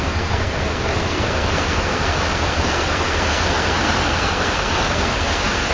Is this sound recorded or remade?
remade